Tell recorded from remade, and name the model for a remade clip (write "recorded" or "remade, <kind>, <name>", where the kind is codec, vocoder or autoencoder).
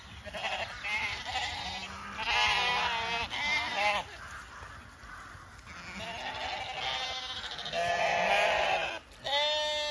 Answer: recorded